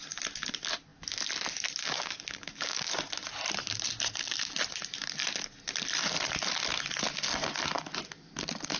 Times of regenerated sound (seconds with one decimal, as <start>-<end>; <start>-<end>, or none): 1.8-2.9